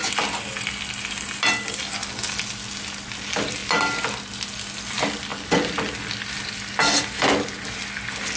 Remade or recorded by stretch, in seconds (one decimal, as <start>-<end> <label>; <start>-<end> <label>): 0.0-8.4 recorded